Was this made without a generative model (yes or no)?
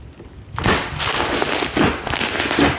yes